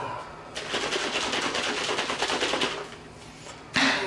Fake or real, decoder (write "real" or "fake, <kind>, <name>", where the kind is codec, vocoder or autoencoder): real